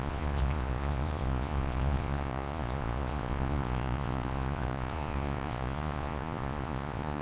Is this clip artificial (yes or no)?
yes